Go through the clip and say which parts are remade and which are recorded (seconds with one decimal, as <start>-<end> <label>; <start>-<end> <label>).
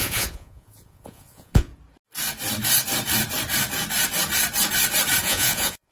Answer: 0.0-1.7 remade; 1.7-5.2 recorded; 5.2-5.9 remade